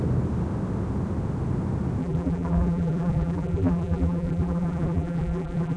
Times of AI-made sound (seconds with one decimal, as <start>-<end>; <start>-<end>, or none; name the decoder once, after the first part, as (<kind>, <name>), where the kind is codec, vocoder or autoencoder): 2.0-5.8 (vocoder, BigVGAN v2)